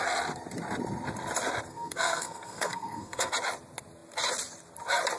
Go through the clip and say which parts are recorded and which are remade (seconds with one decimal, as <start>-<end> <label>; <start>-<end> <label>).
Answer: 0.0-1.7 recorded; 1.7-3.3 remade; 3.3-5.2 recorded